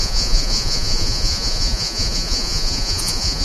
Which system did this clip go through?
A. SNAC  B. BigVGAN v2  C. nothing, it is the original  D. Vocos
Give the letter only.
D